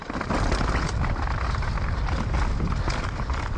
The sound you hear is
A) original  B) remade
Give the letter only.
A